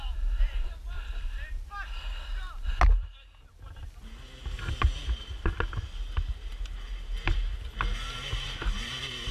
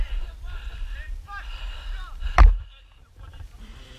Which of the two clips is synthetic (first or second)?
second